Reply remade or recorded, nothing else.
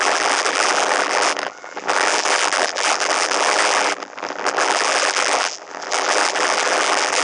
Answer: remade